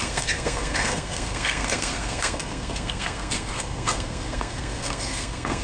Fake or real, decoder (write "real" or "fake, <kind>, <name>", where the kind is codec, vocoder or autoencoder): fake, codec, SNAC